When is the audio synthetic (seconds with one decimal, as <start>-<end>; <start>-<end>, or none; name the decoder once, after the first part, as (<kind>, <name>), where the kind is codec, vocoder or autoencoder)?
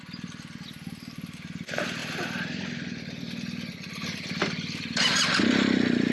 none